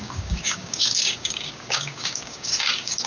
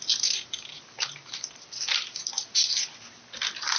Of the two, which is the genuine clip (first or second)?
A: second